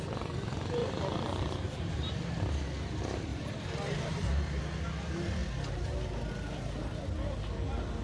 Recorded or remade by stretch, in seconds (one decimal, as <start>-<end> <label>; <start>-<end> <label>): 0.0-0.8 recorded; 0.8-2.4 remade; 2.4-3.3 recorded; 3.3-4.6 remade; 4.6-8.0 recorded